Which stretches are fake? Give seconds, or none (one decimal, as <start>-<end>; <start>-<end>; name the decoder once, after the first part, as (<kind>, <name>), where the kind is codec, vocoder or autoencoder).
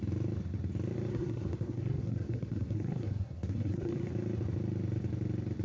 1.1-4.1 (codec, SNAC)